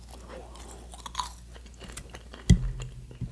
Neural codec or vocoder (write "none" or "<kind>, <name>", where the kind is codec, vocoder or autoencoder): none